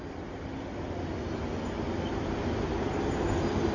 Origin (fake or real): real